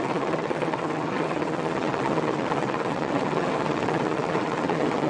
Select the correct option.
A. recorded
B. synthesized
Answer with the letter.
B